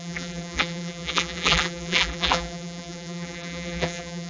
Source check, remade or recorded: remade